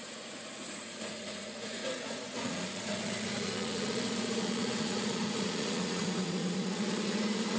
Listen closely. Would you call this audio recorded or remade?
remade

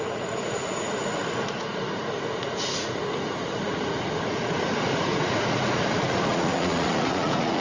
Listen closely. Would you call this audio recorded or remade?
remade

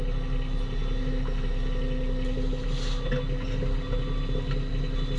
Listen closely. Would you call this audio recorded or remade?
recorded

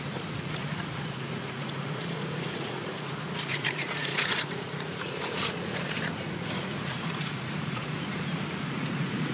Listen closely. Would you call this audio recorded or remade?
remade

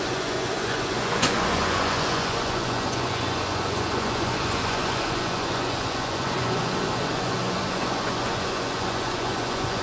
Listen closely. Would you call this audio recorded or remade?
remade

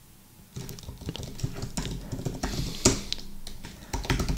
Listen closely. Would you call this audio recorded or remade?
recorded